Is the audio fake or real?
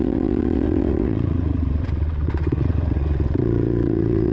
fake